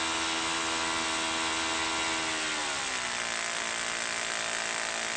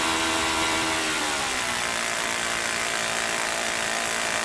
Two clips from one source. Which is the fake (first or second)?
second